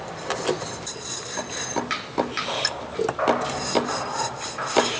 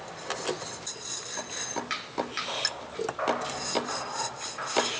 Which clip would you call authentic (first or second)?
second